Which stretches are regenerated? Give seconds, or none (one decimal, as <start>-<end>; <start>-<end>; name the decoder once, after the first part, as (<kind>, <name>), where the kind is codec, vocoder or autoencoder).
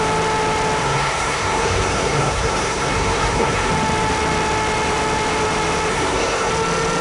0.8-3.7 (codec, SNAC); 5.9-6.5